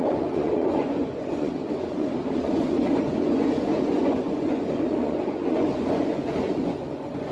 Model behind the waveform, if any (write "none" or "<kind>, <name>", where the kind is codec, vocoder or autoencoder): vocoder, Vocos